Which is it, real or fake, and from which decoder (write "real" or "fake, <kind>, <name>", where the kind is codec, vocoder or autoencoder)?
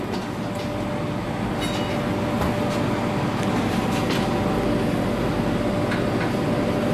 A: real